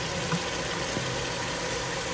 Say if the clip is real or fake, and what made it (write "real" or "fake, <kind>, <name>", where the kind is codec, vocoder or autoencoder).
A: real